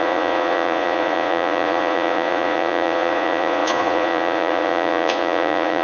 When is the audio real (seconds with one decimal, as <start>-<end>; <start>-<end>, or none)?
none